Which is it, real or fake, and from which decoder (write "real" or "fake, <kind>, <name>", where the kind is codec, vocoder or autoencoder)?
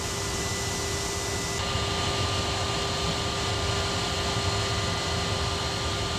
real